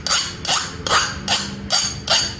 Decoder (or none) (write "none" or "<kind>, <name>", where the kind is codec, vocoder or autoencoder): none